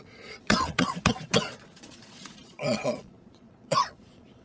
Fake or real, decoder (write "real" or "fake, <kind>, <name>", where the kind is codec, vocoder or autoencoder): fake, vocoder, Vocos